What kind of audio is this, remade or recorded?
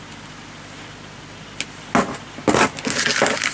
recorded